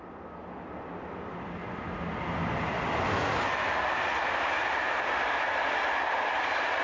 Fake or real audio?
real